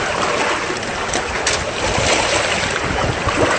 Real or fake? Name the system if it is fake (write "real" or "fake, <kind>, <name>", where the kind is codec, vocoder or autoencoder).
real